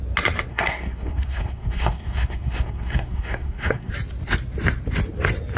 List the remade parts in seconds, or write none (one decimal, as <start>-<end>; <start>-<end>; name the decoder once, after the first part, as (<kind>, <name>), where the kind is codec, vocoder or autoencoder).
0.5-3.9 (codec, SNAC)